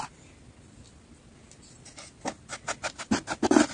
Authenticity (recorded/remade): recorded